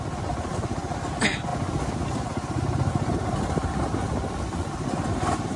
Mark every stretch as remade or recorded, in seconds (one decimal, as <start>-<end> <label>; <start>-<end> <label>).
0.0-5.6 recorded